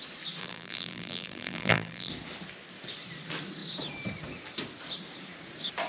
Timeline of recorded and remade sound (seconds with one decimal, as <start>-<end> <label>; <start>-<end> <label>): 0.0-0.4 recorded; 0.4-2.1 remade; 2.1-5.9 recorded